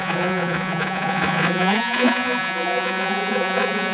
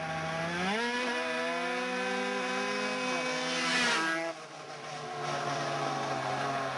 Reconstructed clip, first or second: first